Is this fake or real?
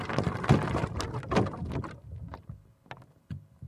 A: real